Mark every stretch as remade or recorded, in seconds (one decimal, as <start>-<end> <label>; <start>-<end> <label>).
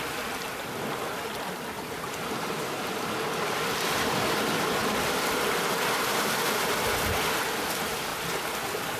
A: 0.0-9.0 recorded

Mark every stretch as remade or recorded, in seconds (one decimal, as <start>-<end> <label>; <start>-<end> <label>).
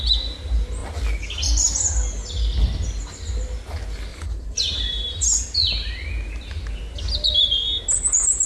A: 0.0-4.1 recorded; 4.1-5.4 remade; 5.4-8.5 recorded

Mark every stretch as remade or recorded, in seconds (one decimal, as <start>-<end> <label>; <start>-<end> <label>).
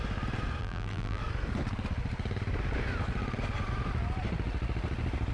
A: 0.0-0.6 recorded; 0.6-1.2 remade; 1.2-5.3 recorded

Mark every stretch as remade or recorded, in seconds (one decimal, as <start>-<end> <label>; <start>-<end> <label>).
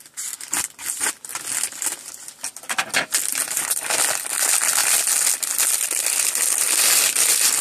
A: 0.0-7.6 recorded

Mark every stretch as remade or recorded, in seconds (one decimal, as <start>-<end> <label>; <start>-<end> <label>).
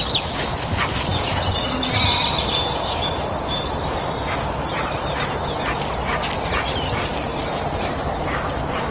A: 0.0-8.9 recorded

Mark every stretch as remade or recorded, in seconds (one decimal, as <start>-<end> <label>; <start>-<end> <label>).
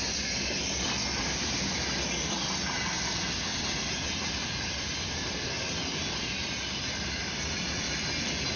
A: 0.0-8.6 recorded